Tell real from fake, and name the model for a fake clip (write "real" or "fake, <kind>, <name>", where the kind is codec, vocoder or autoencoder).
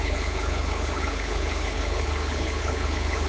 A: fake, codec, HILCodec